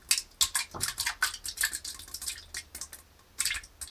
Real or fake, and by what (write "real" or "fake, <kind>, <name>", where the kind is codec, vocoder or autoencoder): real